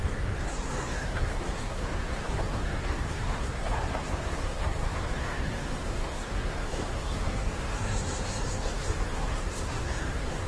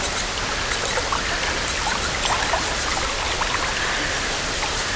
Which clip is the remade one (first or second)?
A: first